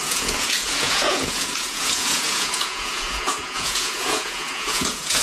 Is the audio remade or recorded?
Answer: remade